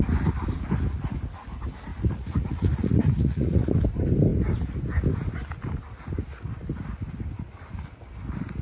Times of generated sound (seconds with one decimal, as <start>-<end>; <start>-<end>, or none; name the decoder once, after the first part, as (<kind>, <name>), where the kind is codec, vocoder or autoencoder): 1.9-3.8 (vocoder, Vocos)